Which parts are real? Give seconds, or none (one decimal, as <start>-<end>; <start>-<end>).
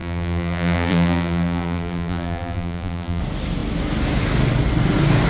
3.2-5.3